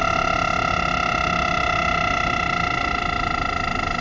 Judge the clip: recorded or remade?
recorded